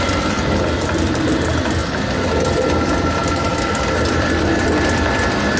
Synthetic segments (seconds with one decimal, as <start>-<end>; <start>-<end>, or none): 0.0-1.8; 2.8-5.6